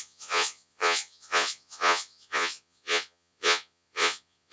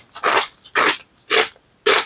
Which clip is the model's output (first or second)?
first